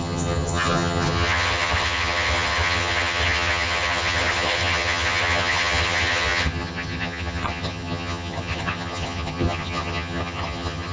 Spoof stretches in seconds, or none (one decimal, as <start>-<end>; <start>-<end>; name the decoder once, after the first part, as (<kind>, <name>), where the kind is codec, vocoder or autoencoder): 0.0-10.9 (vocoder, HiFi-GAN)